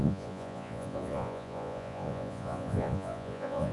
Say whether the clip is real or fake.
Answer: fake